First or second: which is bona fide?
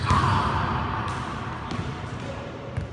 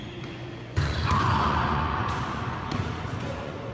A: first